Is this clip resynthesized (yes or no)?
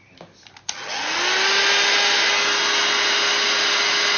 no